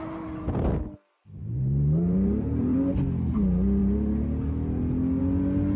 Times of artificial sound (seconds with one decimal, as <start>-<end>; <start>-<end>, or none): 1.4-2.9